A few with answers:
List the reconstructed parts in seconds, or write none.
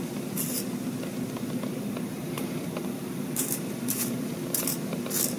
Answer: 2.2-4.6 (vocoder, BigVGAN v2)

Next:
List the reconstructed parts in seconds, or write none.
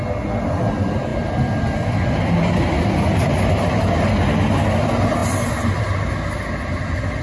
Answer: 1.1-3.3 (vocoder, BigVGAN v2)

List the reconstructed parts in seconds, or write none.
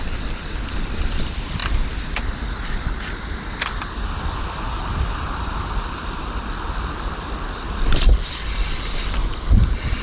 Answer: none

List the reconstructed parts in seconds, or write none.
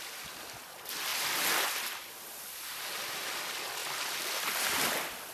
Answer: 1.1-3.4 (vocoder, BigVGAN v2); 3.8-4.3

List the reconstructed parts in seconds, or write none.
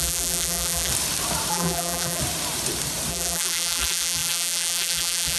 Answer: 0.0-0.9 (vocoder, BigVGAN v2); 1.5-2.2; 3.1-5.4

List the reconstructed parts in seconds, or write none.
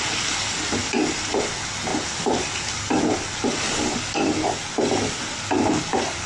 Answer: 1.9-4.0 (vocoder, BigVGAN v2)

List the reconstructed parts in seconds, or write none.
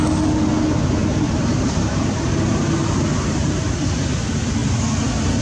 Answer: 1.0-2.6 (vocoder, BigVGAN v2)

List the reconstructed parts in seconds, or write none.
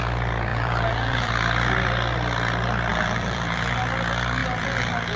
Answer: 0.5-1.3 (vocoder, BigVGAN v2); 2.9-3.8; 4.4-5.2